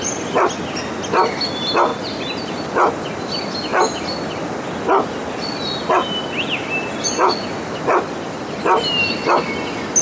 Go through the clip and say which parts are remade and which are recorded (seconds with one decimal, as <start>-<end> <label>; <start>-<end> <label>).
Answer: 0.0-1.9 recorded; 1.9-2.5 remade; 2.5-10.0 recorded

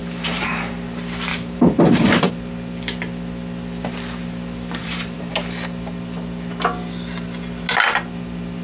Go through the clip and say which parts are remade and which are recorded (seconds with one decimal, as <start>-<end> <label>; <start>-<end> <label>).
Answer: 0.0-0.7 remade; 0.7-1.3 recorded; 1.3-2.3 remade; 2.3-4.8 recorded; 4.8-5.3 remade; 5.3-8.6 recorded

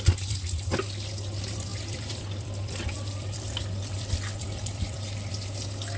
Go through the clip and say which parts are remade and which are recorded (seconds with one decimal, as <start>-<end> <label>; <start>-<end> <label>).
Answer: 0.0-1.7 recorded; 1.7-5.3 remade; 5.3-6.0 recorded

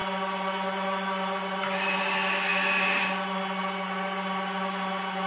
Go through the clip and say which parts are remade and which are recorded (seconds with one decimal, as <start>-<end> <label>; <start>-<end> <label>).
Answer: 0.0-5.3 recorded

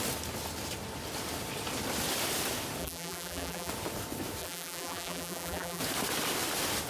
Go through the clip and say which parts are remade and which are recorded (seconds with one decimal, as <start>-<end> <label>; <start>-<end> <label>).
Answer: 0.0-2.8 recorded; 2.8-3.7 remade; 3.7-4.4 recorded; 4.4-5.8 remade; 5.8-6.9 recorded

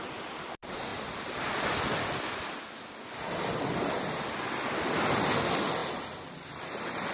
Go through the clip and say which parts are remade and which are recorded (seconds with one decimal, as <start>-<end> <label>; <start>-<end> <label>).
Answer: 0.0-7.1 recorded

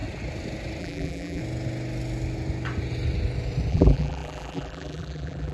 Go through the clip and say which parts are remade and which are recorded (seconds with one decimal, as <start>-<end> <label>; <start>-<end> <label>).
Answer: 0.0-0.8 recorded; 0.8-1.4 remade; 1.4-3.7 recorded; 3.7-5.5 remade